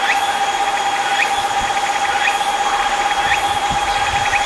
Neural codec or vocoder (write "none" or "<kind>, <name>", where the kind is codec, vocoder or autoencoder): none